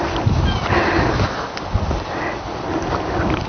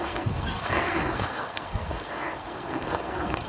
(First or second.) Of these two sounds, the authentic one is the first